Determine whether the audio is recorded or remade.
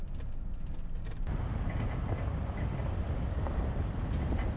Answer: recorded